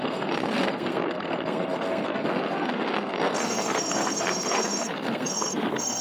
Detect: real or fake fake